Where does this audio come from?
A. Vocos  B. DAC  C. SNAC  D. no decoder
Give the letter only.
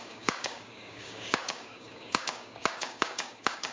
B